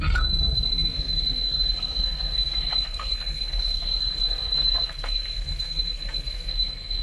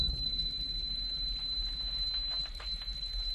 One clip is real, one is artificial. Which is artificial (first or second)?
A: first